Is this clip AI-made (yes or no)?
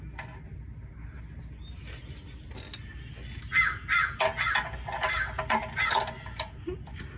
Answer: no